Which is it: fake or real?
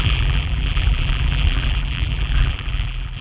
fake